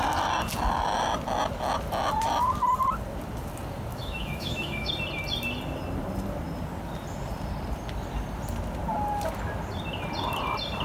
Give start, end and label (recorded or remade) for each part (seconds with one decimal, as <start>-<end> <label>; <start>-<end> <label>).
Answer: 0.0-3.9 recorded; 3.9-4.9 remade; 4.9-10.8 recorded